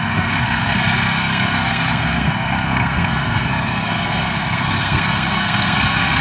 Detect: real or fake fake